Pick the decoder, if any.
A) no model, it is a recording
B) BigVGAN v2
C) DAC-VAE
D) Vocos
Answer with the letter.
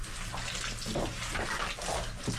A